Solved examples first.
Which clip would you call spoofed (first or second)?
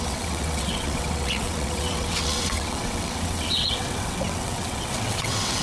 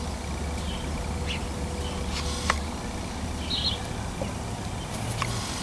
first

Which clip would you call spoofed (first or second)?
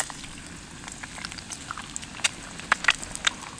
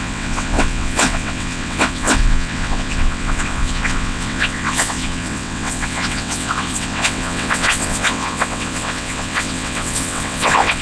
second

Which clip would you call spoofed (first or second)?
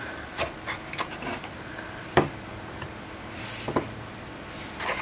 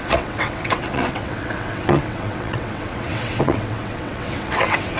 second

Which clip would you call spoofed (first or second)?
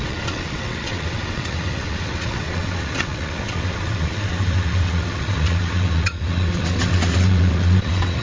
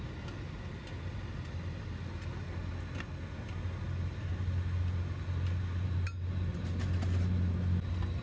first